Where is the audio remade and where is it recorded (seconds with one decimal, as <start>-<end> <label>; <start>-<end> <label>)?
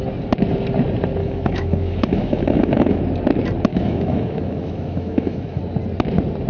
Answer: 0.0-1.2 recorded; 1.2-3.0 remade; 3.0-3.7 recorded; 3.7-5.6 remade; 5.6-6.5 recorded